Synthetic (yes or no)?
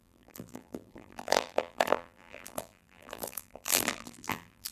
yes